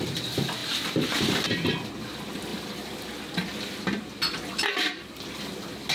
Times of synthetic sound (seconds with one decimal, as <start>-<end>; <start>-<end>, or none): 0.6-1.9; 2.5-3.2